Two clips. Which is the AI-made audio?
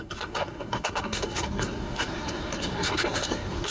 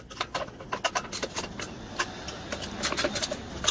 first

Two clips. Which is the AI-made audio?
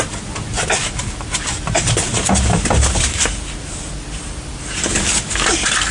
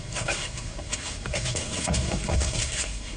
second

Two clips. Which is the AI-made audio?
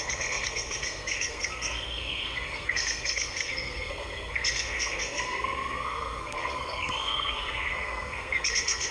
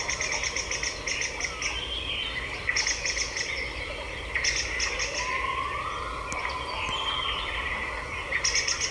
first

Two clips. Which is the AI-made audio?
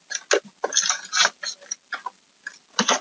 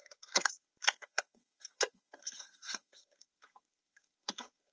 second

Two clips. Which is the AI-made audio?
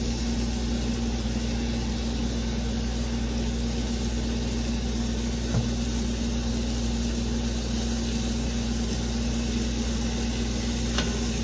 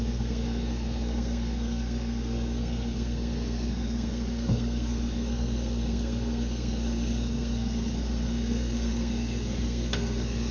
second